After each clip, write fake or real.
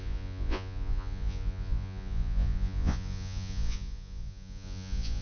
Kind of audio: fake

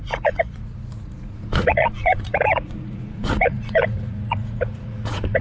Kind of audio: fake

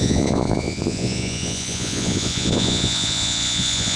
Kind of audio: fake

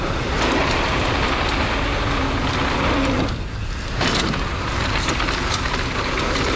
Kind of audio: real